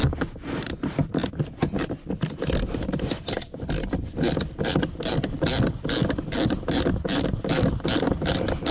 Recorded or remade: recorded